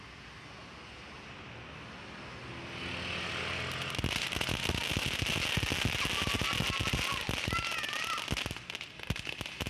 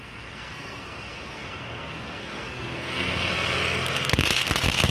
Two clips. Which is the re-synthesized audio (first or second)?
second